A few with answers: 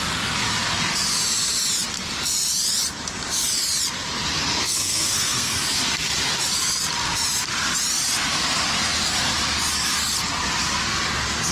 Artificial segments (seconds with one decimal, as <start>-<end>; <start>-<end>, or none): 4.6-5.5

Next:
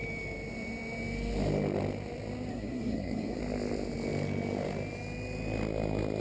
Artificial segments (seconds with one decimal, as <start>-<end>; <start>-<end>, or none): 2.5-3.4

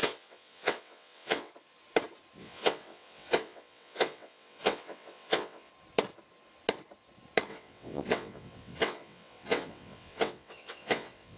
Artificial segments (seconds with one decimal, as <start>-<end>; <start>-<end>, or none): 0.0-1.5; 2.4-5.7; 7.5-11.4

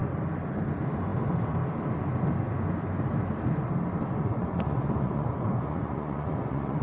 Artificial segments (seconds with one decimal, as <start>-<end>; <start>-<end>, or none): 4.2-6.8

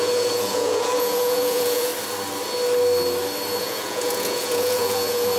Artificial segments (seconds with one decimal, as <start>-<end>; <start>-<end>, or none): 0.0-1.9; 3.6-5.4